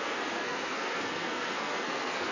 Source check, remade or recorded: remade